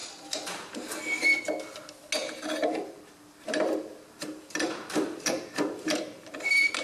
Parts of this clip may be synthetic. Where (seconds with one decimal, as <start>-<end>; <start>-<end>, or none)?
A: 0.0-1.0; 2.2-6.3